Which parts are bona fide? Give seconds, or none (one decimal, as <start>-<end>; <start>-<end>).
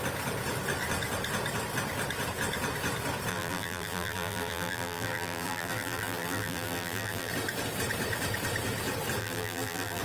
0.0-3.3; 7.3-9.2